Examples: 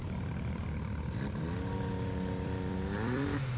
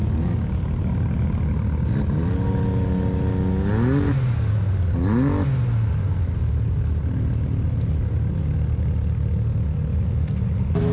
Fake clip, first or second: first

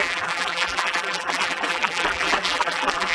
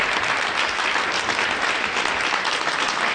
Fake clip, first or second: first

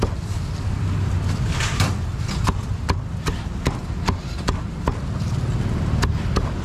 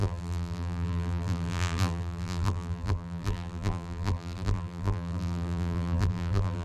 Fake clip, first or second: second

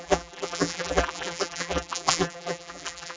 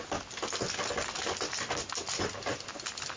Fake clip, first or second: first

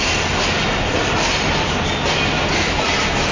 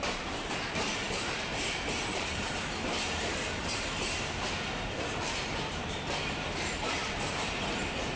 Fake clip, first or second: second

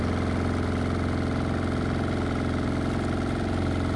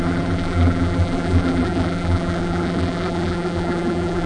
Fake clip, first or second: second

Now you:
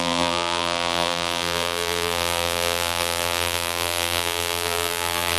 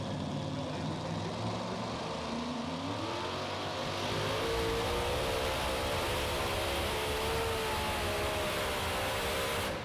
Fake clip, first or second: first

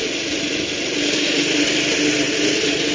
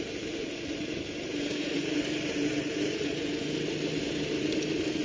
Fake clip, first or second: second